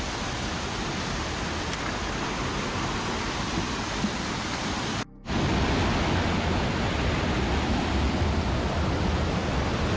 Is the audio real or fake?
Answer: real